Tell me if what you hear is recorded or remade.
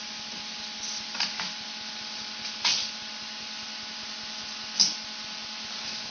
recorded